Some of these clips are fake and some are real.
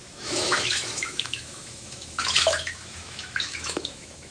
fake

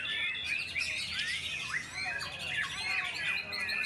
real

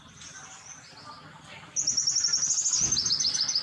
real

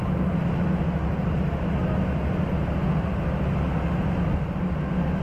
real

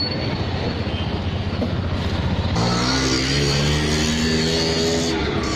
real